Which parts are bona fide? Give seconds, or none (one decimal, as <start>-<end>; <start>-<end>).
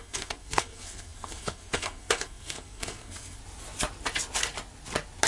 3.4-5.3